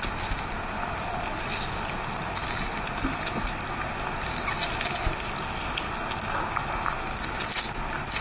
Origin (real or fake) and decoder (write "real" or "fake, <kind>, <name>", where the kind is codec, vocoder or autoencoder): real